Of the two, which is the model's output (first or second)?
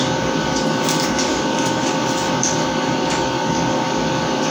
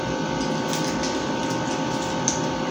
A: first